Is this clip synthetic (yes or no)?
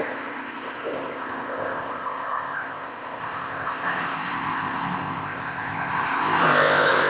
yes